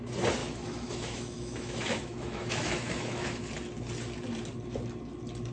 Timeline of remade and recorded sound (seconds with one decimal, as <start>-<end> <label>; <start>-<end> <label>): 0.0-0.4 recorded; 0.4-3.5 remade; 3.5-5.5 recorded